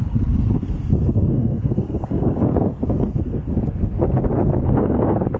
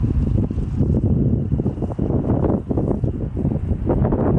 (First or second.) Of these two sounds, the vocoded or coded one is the first